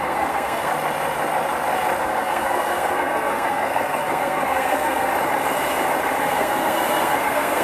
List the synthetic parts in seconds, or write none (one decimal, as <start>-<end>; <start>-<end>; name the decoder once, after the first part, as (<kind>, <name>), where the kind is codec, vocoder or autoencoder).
0.0-0.7 (codec, SNAC); 2.0-5.1; 6.2-7.6